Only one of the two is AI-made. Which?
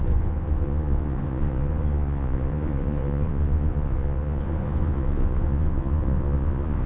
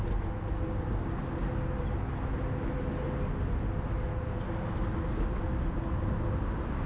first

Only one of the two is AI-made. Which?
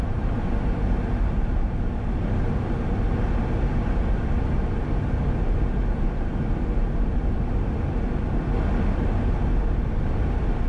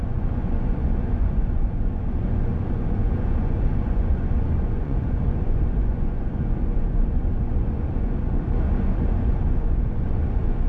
second